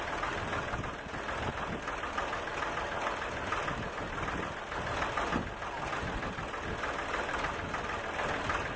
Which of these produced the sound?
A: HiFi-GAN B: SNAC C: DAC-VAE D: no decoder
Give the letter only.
D